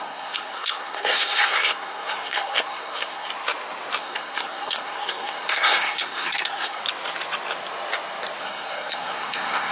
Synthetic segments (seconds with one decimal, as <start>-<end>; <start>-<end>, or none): 0.0-3.3; 4.0-6.8; 8.4-9.7